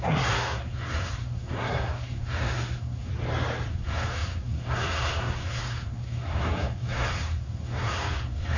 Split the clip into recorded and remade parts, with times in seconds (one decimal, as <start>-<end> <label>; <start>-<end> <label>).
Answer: 0.0-3.1 remade; 3.1-3.7 recorded; 3.7-8.6 remade